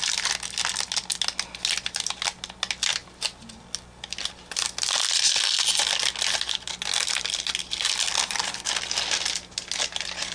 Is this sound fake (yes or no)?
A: no